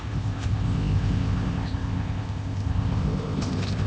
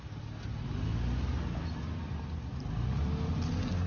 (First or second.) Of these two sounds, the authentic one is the second